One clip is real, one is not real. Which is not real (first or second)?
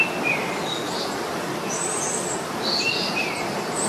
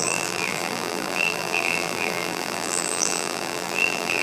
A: second